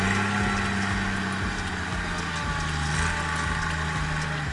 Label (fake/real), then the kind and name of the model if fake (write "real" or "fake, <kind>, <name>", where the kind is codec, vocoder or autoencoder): real